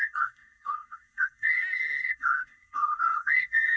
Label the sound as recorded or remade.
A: remade